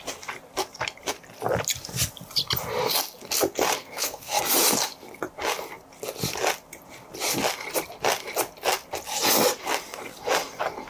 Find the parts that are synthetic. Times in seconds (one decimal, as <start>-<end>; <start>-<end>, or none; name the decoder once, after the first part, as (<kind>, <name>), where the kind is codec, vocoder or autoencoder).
3.8-4.4 (codec, SNAC)